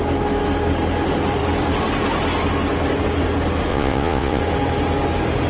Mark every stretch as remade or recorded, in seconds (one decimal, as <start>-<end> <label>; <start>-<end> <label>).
0.0-3.7 recorded; 3.7-4.4 remade; 4.4-5.5 recorded